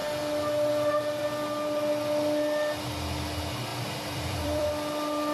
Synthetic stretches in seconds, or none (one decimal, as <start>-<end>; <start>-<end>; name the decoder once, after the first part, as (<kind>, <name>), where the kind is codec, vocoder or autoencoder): 3.7-4.7 (vocoder, BigVGAN v2)